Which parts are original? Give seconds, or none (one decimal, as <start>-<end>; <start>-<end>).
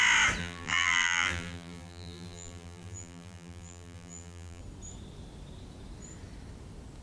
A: 0.0-0.4; 4.6-7.0